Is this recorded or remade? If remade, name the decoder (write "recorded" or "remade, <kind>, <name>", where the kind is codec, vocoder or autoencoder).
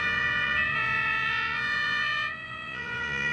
remade, vocoder, Vocos